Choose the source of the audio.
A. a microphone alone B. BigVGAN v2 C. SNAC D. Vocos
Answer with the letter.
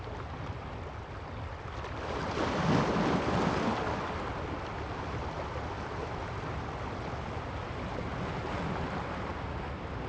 A